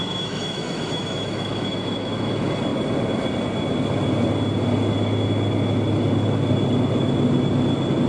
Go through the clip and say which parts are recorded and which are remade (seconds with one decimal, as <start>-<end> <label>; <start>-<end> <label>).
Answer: 0.0-2.3 remade; 2.3-8.1 recorded